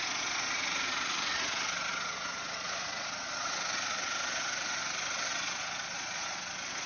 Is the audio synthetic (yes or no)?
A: yes